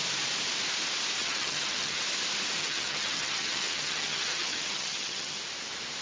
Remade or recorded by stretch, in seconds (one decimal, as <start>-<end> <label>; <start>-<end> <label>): 0.0-1.2 recorded; 1.2-2.0 remade; 2.0-2.6 recorded; 2.6-5.4 remade; 5.4-6.0 recorded